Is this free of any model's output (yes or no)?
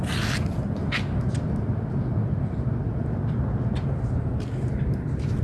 yes